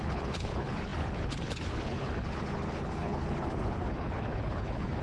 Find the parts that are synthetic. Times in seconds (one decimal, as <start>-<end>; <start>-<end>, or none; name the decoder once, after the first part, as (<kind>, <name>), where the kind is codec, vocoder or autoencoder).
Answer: 0.0-5.0 (codec, HILCodec)